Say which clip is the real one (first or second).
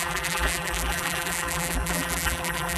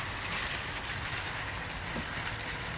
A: second